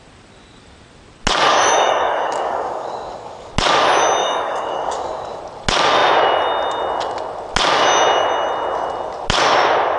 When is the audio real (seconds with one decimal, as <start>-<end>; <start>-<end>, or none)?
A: 0.0-1.5; 3.5-4.2; 5.4-10.0